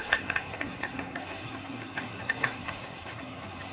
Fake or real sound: fake